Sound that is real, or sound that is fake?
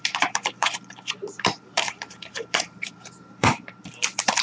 fake